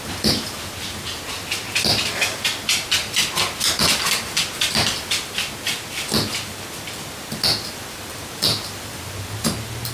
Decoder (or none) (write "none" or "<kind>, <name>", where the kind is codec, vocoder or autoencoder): none